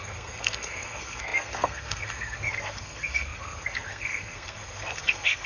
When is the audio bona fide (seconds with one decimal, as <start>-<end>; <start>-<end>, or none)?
none